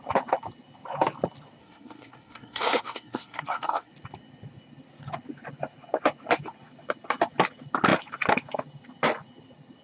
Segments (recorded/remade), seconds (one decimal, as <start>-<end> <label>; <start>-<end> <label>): 0.0-1.6 recorded; 1.6-3.9 remade; 3.9-9.8 recorded